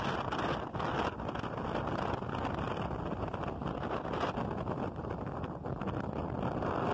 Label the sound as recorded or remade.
recorded